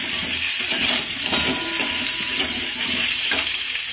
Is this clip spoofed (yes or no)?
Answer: yes